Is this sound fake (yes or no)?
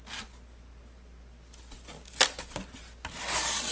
no